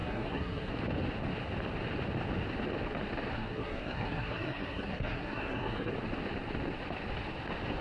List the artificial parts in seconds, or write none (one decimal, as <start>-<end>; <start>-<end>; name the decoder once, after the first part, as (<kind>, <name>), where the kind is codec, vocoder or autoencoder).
0.0-0.7 (codec, SNAC); 3.3-5.9